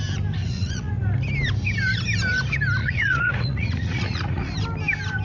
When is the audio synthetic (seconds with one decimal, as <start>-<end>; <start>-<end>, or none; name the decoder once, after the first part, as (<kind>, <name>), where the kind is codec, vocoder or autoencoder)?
0.4-0.9 (vocoder, Vocos); 2.8-4.5